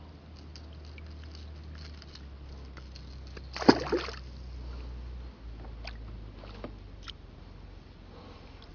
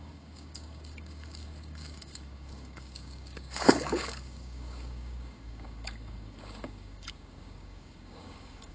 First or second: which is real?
first